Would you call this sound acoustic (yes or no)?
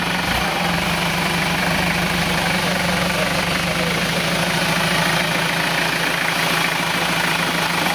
yes